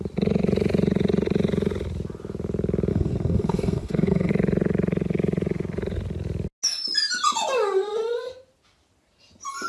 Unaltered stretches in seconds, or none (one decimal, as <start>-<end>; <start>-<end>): 0.0-2.9; 4.3-9.7